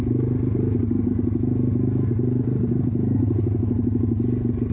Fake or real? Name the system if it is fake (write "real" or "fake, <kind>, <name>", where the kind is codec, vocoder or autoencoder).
real